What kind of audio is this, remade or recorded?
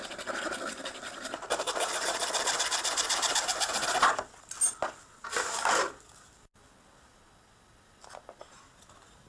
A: recorded